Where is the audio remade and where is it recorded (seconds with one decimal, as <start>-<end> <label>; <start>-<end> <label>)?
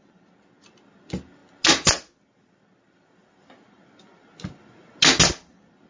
0.0-5.9 recorded